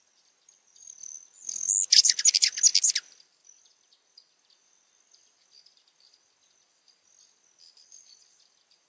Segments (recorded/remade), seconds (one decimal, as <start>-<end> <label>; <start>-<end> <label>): 0.0-8.9 recorded

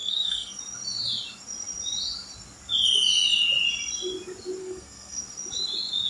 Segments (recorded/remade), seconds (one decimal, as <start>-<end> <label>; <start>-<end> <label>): 0.0-0.6 remade; 0.6-4.6 recorded; 4.6-5.2 remade; 5.2-6.1 recorded

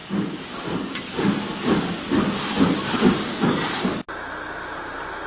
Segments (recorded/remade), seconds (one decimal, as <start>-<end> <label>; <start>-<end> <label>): 0.0-5.3 recorded

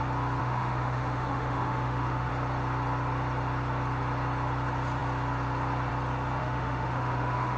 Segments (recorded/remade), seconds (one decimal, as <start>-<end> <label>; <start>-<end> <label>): 0.0-0.4 recorded; 0.4-2.3 remade; 2.3-6.4 recorded; 6.4-7.6 remade